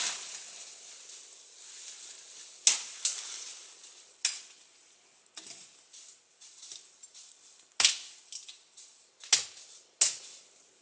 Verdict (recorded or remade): recorded